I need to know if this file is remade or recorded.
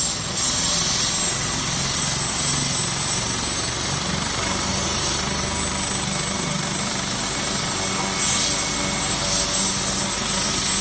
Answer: recorded